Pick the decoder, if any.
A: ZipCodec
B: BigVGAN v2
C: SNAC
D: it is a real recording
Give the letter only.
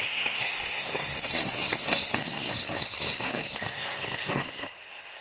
C